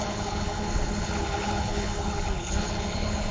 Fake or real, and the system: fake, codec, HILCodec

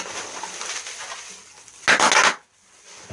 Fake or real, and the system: real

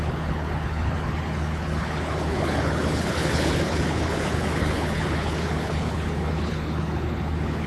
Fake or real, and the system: fake, codec, HILCodec